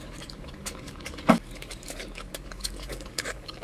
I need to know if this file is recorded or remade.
remade